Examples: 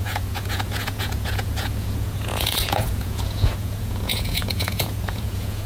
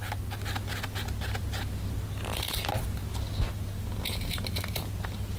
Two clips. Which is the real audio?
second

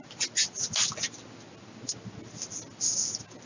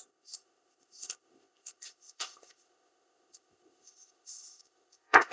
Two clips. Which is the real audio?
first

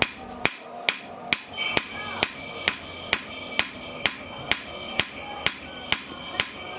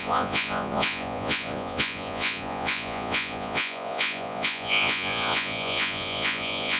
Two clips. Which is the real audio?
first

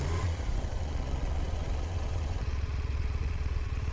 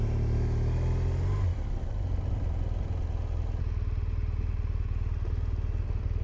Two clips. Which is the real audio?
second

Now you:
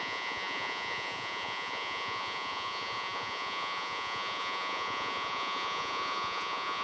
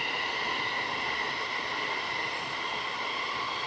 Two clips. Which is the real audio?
second